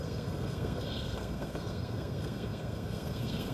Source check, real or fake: fake